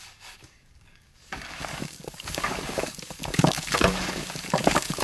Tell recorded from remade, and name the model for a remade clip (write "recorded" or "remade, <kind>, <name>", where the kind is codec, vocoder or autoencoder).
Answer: remade, codec, DAC